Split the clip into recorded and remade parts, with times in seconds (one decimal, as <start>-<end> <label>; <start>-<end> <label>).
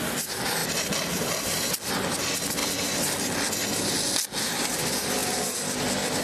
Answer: 0.0-6.2 recorded